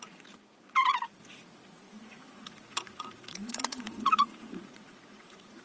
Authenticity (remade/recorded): remade